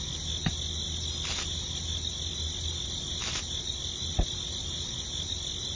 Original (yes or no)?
yes